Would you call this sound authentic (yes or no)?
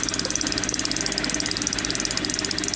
yes